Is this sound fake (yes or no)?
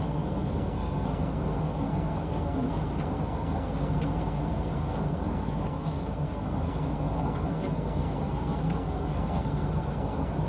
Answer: yes